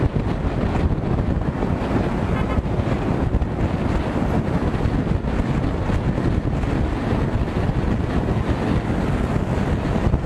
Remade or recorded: recorded